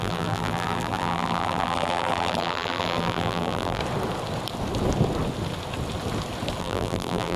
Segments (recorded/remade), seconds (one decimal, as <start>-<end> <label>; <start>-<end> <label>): 0.0-3.8 remade; 3.8-6.6 recorded; 6.6-7.4 remade